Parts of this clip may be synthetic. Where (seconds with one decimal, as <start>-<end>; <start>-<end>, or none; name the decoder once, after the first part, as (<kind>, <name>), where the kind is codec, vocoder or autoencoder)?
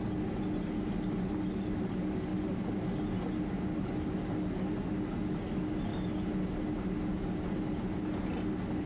none